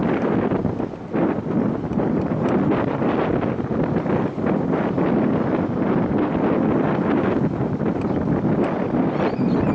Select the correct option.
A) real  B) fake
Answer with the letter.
A